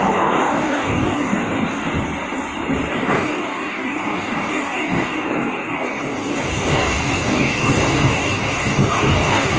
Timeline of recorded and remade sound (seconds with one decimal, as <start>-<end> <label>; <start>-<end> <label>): 0.0-1.9 remade; 1.9-2.9 recorded; 2.9-9.6 remade